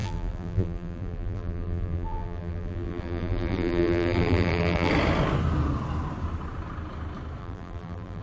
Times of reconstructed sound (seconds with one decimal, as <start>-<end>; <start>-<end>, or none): 0.0-4.9; 7.4-8.2